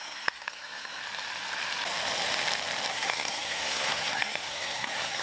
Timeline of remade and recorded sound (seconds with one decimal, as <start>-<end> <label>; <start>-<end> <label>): 0.0-1.0 remade; 1.0-2.9 recorded; 2.9-5.2 remade